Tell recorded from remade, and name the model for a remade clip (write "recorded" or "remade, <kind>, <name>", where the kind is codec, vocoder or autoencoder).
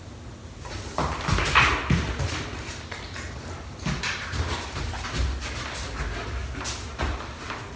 recorded